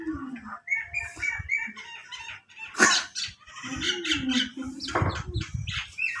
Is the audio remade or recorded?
recorded